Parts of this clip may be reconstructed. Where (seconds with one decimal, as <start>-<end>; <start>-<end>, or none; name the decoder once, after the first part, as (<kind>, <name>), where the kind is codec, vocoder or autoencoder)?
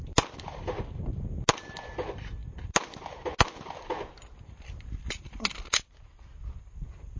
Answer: none